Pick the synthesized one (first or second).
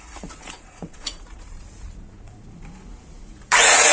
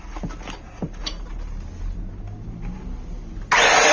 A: first